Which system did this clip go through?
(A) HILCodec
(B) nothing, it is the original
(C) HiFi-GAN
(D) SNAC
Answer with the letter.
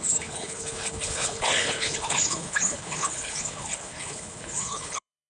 A